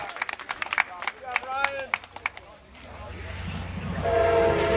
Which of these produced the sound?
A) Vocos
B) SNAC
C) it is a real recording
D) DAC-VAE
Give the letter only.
C